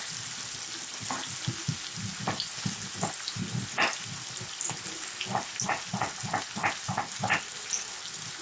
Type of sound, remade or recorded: recorded